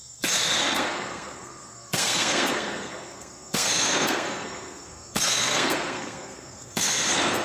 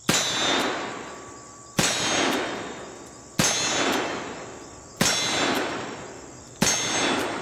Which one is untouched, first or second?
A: second